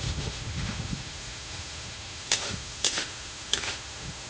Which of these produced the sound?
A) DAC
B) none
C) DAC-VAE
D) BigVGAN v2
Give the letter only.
C